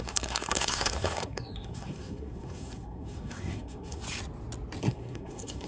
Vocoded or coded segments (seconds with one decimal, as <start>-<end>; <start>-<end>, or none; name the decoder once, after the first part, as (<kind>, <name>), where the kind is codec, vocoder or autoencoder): 0.0-4.0 (codec, SNAC); 4.8-5.7